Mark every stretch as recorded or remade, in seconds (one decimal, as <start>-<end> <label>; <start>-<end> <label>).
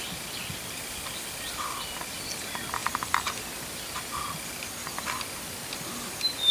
0.0-6.5 recorded